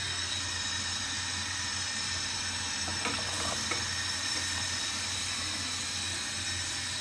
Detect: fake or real real